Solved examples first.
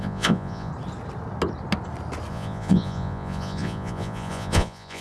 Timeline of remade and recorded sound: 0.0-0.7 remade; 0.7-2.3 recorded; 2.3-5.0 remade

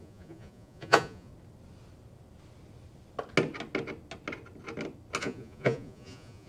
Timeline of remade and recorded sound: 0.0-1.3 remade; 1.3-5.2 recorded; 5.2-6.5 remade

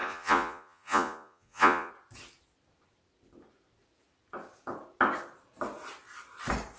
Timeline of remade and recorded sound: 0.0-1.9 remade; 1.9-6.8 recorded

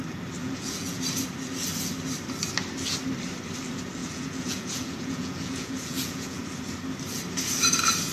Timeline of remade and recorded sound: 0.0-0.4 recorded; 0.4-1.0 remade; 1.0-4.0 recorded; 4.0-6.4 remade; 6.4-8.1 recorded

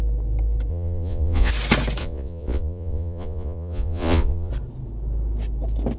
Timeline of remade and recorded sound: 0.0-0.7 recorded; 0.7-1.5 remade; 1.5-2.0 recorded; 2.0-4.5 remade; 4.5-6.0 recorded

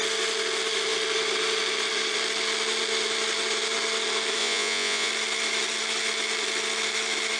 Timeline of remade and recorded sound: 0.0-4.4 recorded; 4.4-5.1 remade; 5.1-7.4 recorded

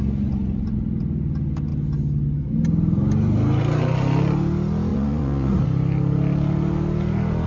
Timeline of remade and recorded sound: 0.0-4.9 recorded; 4.9-5.6 remade; 5.6-7.5 recorded